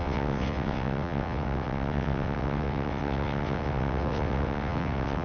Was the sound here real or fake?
fake